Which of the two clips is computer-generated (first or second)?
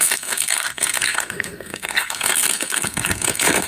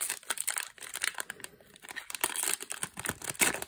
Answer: first